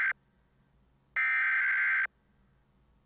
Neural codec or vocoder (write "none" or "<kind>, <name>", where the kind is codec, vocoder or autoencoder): none